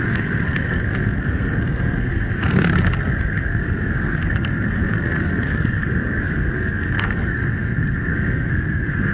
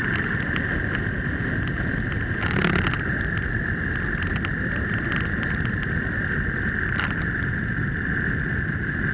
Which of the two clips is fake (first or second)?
first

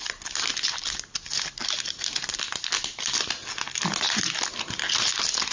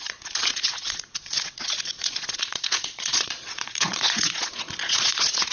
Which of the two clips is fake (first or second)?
second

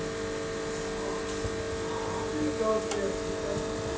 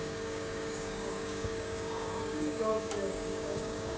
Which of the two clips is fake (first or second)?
second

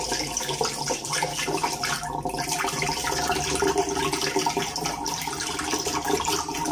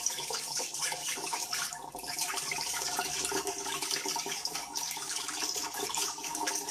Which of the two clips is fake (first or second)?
second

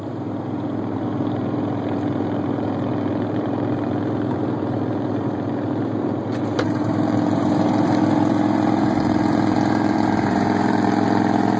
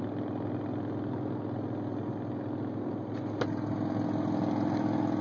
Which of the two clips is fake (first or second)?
first